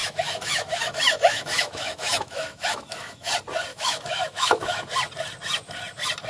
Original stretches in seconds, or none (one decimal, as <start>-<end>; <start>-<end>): 3.3-3.7; 4.8-6.3